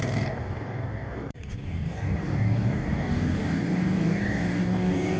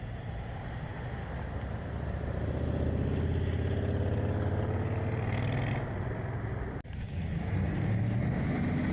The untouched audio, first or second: second